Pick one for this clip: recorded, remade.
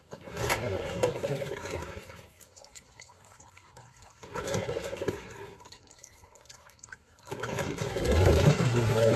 remade